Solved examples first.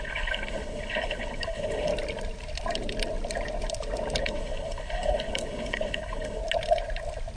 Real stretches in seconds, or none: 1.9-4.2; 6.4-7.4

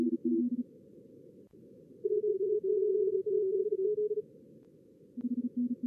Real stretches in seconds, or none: 0.0-5.9

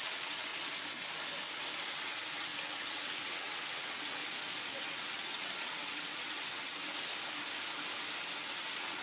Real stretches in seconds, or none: 0.5-1.9; 4.2-4.7; 7.1-8.4

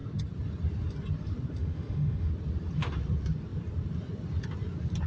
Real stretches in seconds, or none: 0.0-1.6; 2.3-5.1

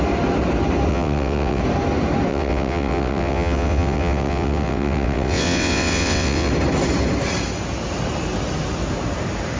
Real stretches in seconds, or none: 0.0-0.9; 1.6-2.3; 6.5-9.6

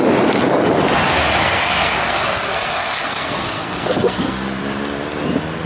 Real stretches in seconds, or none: 0.0-1.4; 4.6-5.7

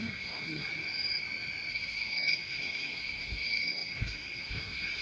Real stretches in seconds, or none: 0.7-1.7